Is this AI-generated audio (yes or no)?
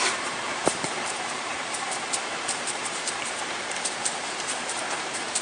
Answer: yes